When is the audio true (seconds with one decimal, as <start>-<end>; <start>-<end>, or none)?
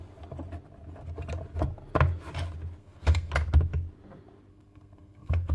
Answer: 0.0-2.8; 3.3-4.5